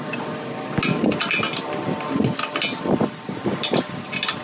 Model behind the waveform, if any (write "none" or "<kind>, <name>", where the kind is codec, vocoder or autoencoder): none